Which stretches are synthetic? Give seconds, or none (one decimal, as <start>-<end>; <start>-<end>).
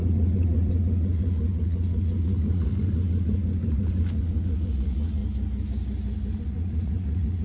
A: 0.0-5.2; 6.4-7.4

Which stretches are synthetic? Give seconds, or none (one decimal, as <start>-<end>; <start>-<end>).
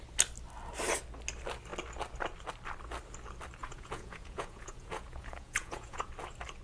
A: 3.6-6.1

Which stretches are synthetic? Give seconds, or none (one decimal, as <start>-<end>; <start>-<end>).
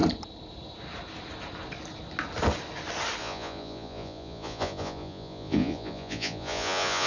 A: 3.2-7.1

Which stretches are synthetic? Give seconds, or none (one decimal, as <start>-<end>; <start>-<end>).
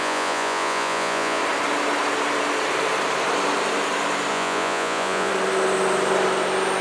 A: 0.0-1.4; 4.3-5.3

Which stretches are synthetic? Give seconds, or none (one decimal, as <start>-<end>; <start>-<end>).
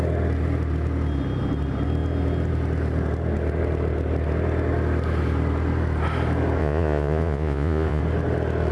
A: 6.6-8.0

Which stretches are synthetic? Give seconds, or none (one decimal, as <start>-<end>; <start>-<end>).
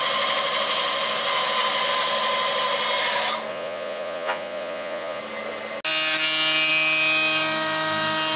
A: 3.5-5.2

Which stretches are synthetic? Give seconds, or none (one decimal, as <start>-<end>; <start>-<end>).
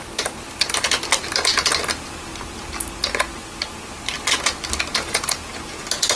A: 4.9-5.8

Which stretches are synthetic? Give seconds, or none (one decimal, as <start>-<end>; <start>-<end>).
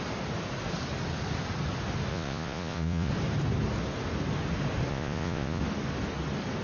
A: 2.1-3.1; 4.9-5.6